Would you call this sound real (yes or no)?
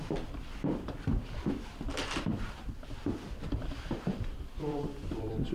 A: no